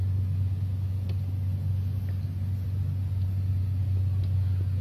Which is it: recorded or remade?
recorded